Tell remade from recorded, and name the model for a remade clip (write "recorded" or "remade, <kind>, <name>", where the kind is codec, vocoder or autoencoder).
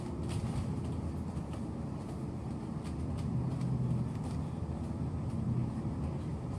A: recorded